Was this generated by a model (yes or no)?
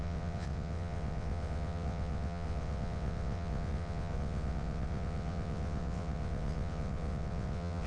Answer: yes